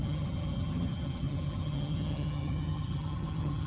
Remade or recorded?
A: remade